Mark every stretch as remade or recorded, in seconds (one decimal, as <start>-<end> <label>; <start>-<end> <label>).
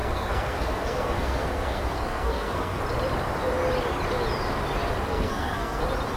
0.0-2.8 remade; 2.8-5.1 recorded; 5.1-5.8 remade; 5.8-6.2 recorded